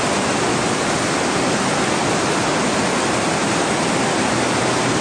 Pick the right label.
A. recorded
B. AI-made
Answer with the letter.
A